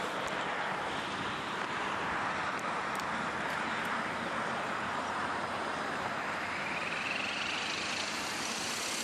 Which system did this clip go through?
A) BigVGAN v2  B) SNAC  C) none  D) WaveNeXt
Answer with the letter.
A